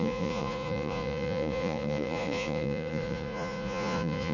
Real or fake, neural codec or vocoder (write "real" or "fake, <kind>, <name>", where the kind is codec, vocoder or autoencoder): fake, vocoder, Vocos